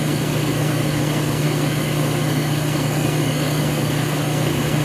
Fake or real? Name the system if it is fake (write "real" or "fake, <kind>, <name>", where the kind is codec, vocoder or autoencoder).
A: fake, codec, SNAC